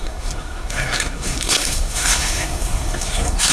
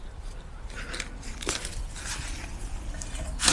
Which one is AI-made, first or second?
first